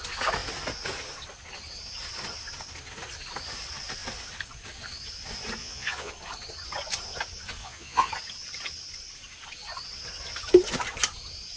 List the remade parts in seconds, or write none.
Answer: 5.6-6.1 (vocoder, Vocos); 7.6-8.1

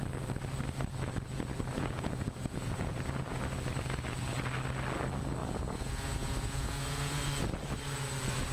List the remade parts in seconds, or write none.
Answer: 1.7-3.4 (vocoder, Vocos); 5.4-7.2

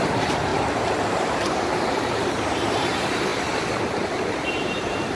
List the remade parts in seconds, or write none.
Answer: 0.0-3.3 (vocoder, BigVGAN v2); 4.5-5.1